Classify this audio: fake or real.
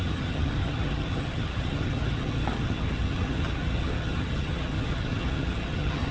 fake